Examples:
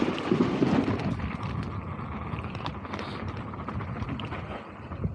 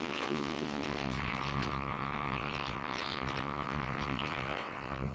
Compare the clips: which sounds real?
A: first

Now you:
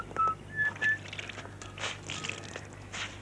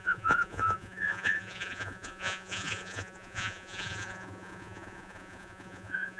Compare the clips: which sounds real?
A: first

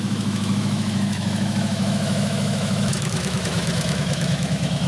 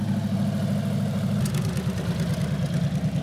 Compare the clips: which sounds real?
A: second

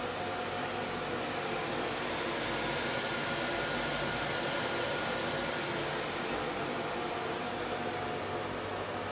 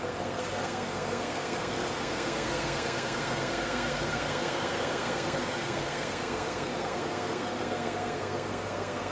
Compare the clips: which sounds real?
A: first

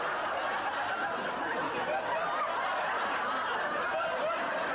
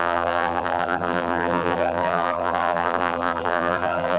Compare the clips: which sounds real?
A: first